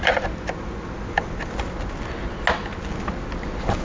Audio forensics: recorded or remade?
recorded